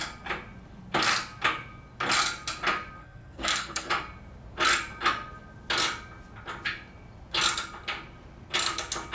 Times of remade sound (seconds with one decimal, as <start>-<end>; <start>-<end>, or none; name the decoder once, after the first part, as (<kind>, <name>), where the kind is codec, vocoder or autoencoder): 3.0-3.9 (codec, SNAC)